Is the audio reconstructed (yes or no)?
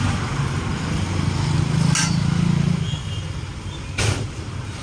no